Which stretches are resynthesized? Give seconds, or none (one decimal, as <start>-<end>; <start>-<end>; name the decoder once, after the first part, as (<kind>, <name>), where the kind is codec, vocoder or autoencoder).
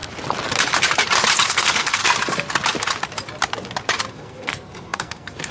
1.5-2.0 (codec, SNAC); 4.1-5.5